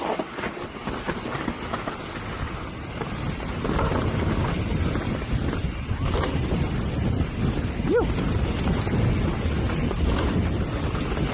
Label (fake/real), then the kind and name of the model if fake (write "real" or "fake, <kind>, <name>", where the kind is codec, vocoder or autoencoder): real